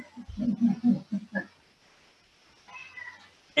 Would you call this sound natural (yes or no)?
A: yes